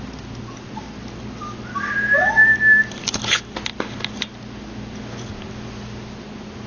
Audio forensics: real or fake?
real